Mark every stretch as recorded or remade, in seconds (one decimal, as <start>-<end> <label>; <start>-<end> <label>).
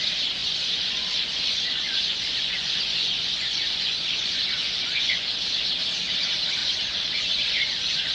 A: 0.0-0.4 recorded; 0.4-5.3 remade; 5.3-6.6 recorded; 6.6-8.1 remade